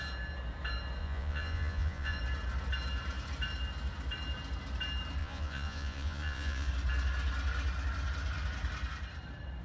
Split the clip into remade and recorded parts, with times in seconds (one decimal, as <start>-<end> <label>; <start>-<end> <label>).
0.0-1.0 recorded; 1.0-2.2 remade; 2.2-5.2 recorded; 5.2-6.7 remade; 6.7-9.6 recorded